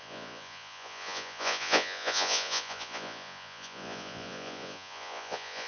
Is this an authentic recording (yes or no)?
no